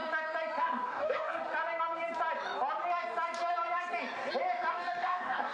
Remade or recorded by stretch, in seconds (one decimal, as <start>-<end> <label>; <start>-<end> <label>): 0.0-0.6 recorded; 0.6-1.4 remade; 1.4-4.7 recorded; 4.7-5.5 remade

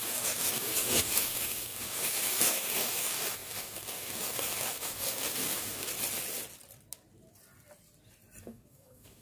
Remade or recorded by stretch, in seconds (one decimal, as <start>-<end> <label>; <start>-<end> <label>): 0.0-5.9 remade; 5.9-8.4 recorded; 8.4-9.2 remade

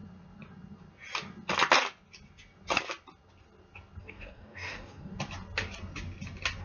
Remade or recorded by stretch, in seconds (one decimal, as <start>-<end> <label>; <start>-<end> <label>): 0.0-4.0 recorded; 4.0-5.1 remade; 5.1-6.6 recorded

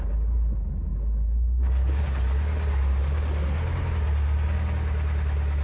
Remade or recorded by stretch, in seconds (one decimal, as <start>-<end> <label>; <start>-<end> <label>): 0.0-0.9 recorded; 0.9-2.0 remade; 2.0-5.6 recorded

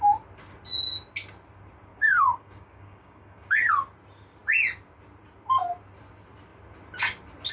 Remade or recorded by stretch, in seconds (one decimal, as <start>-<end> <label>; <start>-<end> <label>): 0.0-1.9 recorded; 1.9-3.7 remade; 3.7-7.5 recorded

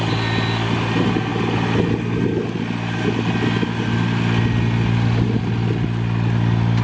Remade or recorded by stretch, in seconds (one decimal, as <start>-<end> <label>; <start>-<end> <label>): 0.0-6.8 recorded

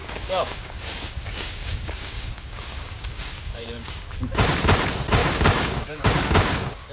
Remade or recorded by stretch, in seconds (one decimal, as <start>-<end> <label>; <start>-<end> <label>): 0.0-4.1 remade; 4.1-5.2 recorded; 5.2-6.9 remade

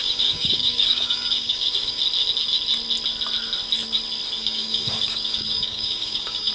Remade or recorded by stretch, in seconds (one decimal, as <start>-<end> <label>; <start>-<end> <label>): 0.0-2.0 remade; 2.0-4.4 recorded; 4.4-6.5 remade